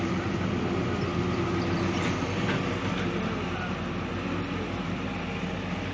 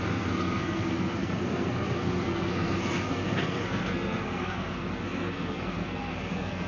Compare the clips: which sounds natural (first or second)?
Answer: first